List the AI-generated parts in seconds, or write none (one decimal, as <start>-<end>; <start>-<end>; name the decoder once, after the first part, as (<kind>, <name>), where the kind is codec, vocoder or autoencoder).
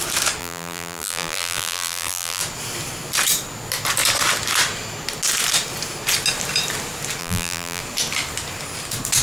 0.4-2.4 (vocoder, BigVGAN v2); 7.2-7.8